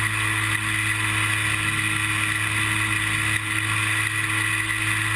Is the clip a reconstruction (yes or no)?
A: no